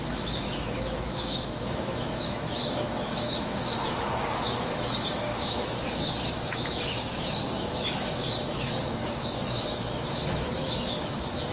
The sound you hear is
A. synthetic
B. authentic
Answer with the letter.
A